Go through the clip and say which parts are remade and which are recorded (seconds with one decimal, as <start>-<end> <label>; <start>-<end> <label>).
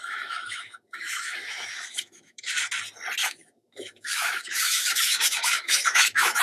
0.0-2.5 remade; 2.5-3.2 recorded; 3.2-6.4 remade